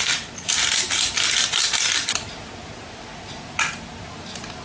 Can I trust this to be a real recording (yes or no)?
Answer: yes